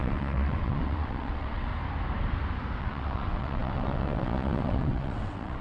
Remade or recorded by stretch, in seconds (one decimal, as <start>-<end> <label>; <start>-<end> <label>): 0.0-1.7 remade; 1.7-2.8 recorded; 2.8-5.6 remade